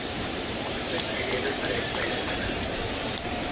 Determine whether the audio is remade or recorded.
remade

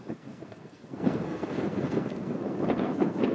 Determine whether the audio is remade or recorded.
remade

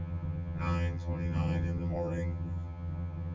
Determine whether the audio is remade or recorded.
remade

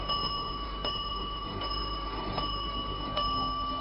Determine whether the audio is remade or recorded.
remade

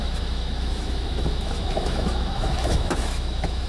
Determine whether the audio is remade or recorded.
remade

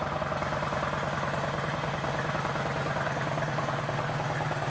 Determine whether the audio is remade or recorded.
recorded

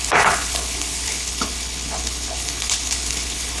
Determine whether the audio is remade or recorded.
remade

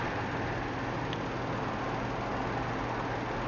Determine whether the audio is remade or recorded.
recorded